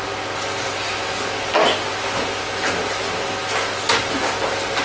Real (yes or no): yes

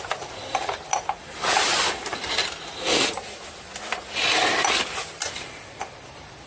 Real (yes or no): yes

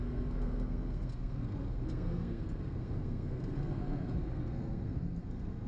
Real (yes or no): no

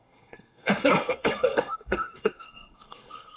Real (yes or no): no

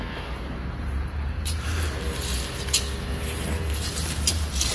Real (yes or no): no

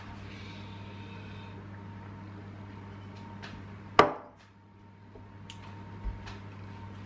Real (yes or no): yes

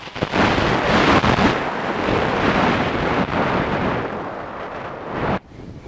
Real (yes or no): yes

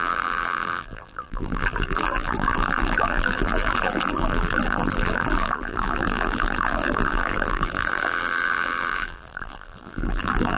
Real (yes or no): no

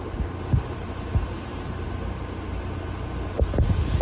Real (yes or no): yes